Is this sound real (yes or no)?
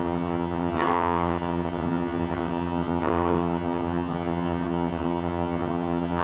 no